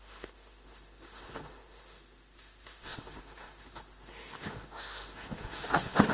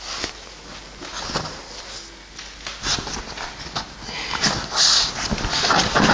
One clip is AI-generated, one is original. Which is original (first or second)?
second